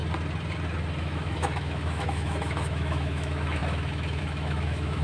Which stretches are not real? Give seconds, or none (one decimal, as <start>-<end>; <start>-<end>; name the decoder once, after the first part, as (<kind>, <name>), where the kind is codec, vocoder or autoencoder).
1.0-5.0 (autoencoder, DAC-VAE)